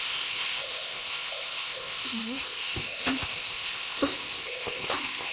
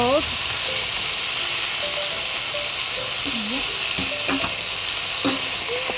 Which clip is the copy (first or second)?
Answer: first